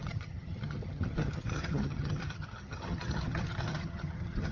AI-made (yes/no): yes